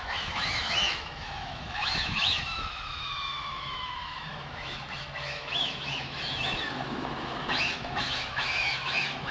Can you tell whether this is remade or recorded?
remade